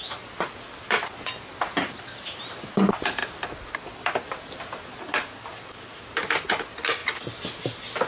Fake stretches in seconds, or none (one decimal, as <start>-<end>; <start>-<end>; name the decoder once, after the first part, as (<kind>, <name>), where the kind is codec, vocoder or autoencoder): none